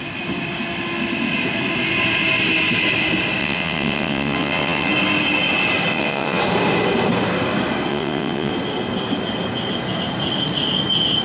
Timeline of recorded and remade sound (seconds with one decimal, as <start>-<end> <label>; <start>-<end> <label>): 0.0-3.4 recorded; 3.4-4.9 remade; 4.9-5.9 recorded; 5.9-6.4 remade; 6.4-7.9 recorded; 7.9-8.5 remade; 8.5-11.2 recorded